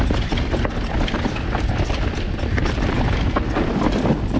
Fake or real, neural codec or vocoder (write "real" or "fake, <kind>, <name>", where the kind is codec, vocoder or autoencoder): real